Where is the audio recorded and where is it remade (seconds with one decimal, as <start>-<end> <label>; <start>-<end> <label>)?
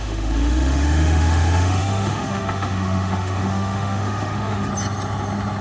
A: 0.0-4.7 remade; 4.7-5.6 recorded